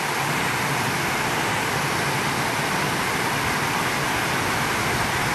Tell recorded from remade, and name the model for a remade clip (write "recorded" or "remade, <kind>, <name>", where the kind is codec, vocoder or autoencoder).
recorded